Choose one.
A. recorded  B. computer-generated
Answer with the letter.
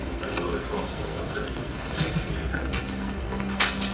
B